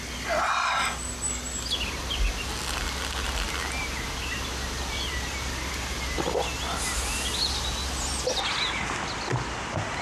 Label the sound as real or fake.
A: real